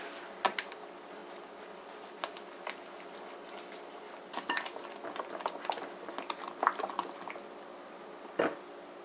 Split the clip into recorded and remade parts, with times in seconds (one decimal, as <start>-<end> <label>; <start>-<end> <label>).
0.0-9.0 recorded